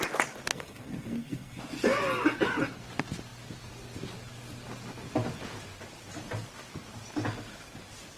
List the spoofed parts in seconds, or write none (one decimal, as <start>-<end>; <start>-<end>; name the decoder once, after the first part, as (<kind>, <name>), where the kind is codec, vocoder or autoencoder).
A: 0.5-1.6 (codec, SNAC)